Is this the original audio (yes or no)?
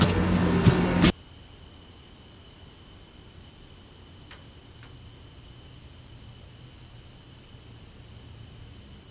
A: yes